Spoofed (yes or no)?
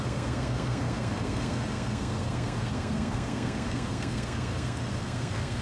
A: yes